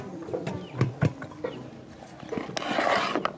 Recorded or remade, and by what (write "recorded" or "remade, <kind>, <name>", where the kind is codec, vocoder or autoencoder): recorded